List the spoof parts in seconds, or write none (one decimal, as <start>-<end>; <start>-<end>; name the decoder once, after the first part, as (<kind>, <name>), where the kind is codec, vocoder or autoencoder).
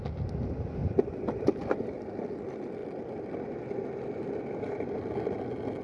none